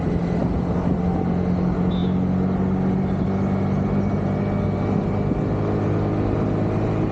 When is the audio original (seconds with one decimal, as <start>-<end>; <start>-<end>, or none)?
0.0-7.1